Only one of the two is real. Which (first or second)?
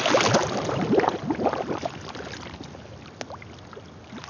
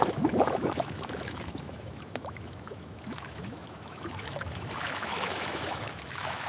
first